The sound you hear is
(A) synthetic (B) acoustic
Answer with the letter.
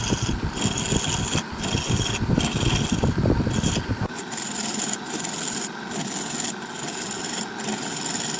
B